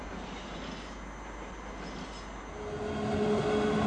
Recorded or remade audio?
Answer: recorded